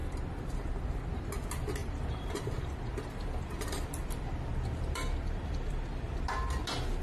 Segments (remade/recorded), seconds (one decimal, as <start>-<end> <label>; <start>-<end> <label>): 0.0-0.7 remade; 0.7-1.8 recorded; 1.8-6.0 remade; 6.0-7.0 recorded